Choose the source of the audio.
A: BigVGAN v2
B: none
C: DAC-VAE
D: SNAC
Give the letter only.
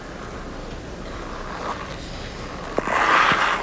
B